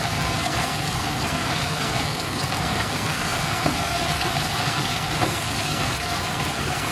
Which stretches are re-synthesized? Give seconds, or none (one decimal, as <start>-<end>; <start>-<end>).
0.0-6.9